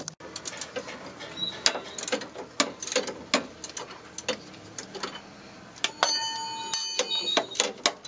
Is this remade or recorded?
recorded